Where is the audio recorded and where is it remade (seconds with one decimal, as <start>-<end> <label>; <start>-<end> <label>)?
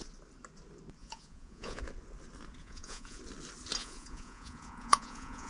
0.0-1.0 recorded; 1.0-1.8 remade; 1.8-2.6 recorded; 2.6-3.2 remade; 3.2-3.8 recorded; 3.8-5.5 remade